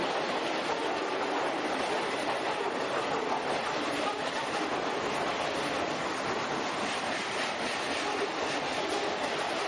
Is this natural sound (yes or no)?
yes